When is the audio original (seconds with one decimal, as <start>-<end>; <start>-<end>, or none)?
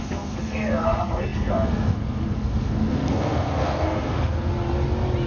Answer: 4.5-5.3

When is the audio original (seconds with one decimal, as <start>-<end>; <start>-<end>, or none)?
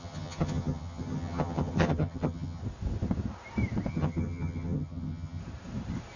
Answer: 2.6-3.9; 5.4-6.2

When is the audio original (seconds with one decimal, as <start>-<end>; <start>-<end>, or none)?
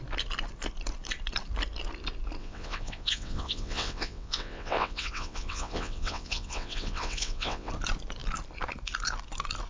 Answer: 0.0-2.4; 7.7-9.7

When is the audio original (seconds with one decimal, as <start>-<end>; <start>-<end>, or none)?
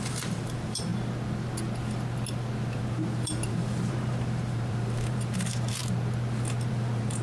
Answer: 0.9-2.8; 5.8-6.7